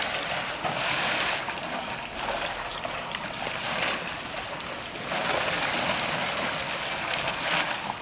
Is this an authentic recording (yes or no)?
yes